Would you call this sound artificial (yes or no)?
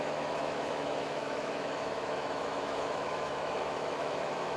yes